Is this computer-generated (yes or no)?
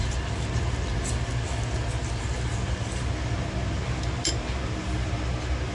no